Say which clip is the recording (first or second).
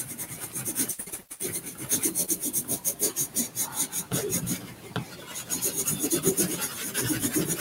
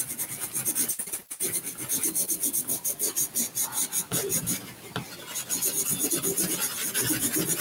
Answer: second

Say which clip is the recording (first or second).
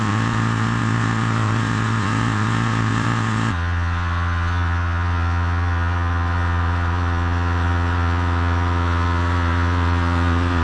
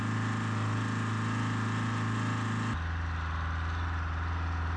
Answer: second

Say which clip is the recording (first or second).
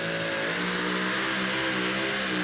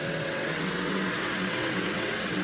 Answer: first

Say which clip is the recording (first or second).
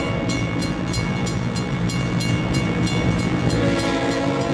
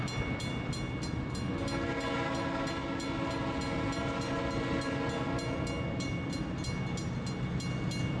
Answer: second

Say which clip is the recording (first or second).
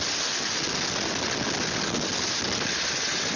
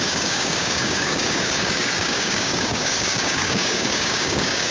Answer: first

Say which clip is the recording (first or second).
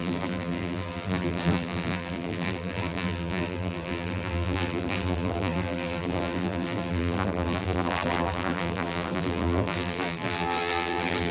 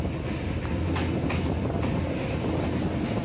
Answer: second